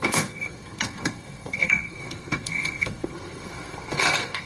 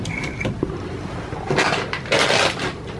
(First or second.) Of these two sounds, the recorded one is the second